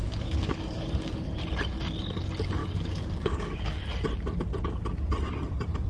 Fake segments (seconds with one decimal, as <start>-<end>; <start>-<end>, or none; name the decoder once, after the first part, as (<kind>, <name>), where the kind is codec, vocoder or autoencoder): 0.0-1.4 (codec, DAC); 2.6-3.8